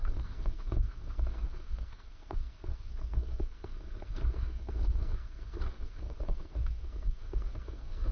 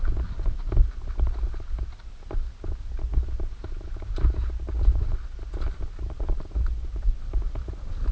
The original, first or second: second